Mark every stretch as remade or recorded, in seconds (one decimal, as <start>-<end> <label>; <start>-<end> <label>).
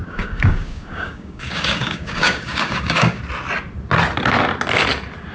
0.0-3.2 remade; 3.2-5.3 recorded